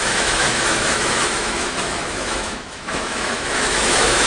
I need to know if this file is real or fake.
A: fake